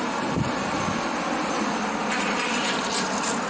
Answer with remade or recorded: recorded